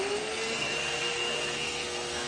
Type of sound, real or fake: fake